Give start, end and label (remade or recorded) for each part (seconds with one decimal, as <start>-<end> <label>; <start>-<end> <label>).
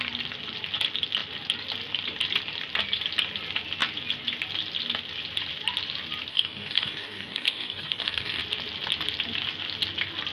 0.0-6.3 recorded; 6.3-8.4 remade; 8.4-10.3 recorded